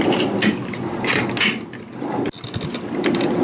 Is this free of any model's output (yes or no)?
yes